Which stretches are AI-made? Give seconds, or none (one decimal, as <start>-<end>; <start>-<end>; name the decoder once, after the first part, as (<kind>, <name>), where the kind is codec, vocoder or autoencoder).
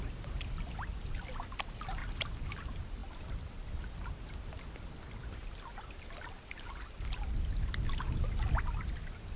none